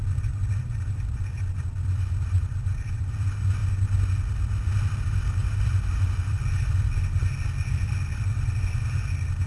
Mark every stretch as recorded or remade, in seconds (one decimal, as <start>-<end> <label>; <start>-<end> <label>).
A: 0.0-3.6 remade; 3.6-4.8 recorded; 4.8-7.2 remade; 7.2-9.5 recorded